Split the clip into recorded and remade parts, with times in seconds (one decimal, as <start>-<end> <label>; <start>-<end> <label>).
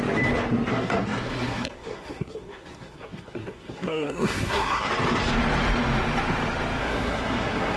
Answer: 0.0-0.7 recorded; 0.7-4.9 remade; 4.9-6.8 recorded; 6.8-7.8 remade